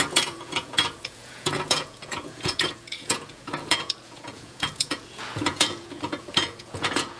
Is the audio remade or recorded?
remade